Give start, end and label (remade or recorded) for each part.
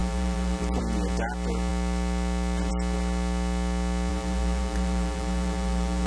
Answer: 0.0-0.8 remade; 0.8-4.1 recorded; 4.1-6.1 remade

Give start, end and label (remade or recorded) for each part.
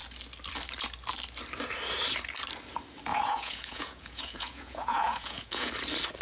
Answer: 0.0-3.1 recorded; 3.1-5.7 remade; 5.7-6.2 recorded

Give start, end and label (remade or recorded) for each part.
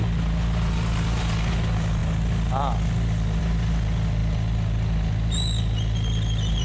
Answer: 0.0-6.6 recorded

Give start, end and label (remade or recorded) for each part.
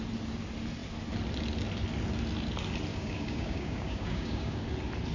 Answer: 0.0-2.9 recorded; 2.9-4.6 remade; 4.6-5.1 recorded